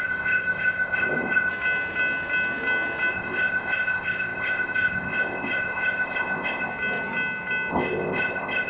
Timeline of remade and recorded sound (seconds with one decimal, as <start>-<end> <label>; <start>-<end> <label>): 0.0-1.5 remade; 1.5-3.1 recorded; 3.1-6.7 remade; 6.7-7.7 recorded; 7.7-8.7 remade